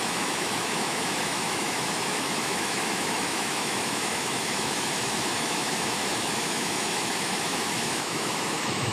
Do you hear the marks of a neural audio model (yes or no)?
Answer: yes